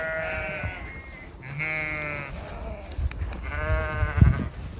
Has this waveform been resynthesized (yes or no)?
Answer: no